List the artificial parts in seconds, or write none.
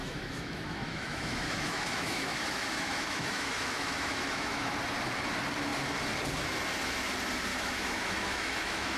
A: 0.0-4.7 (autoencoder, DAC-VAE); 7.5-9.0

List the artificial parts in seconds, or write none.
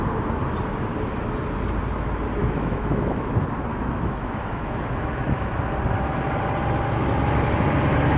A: 2.4-3.3 (autoencoder, DAC-VAE); 3.7-5.5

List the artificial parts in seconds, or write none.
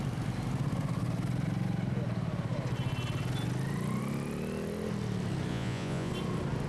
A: 5.5-6.1 (vocoder, Vocos)